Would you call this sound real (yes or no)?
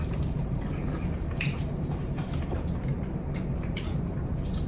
no